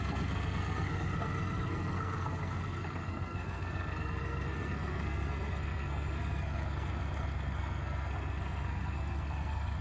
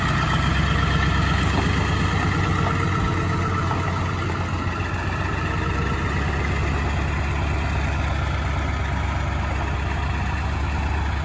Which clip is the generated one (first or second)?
first